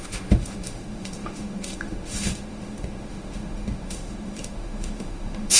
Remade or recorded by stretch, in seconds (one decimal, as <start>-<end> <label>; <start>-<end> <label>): 0.0-5.6 remade